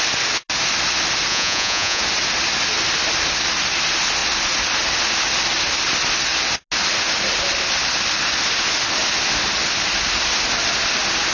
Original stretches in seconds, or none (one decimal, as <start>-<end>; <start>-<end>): 0.0-1.3; 2.0-11.3